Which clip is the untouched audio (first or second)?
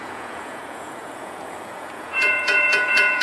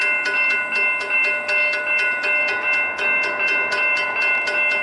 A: second